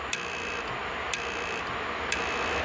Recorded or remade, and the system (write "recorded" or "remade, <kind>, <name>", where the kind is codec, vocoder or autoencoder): recorded